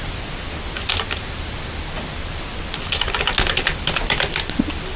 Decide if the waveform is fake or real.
real